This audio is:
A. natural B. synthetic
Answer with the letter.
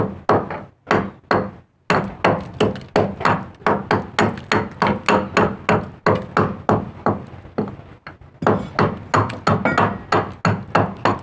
A